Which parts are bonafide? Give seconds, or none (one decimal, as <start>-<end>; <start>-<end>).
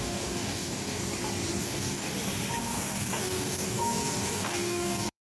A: 1.0-1.6; 2.1-2.6